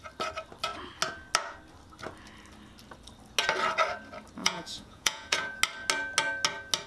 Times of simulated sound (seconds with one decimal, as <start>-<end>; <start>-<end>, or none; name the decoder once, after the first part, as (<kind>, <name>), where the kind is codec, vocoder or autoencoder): 4.4-5.6 (vocoder, Vocos)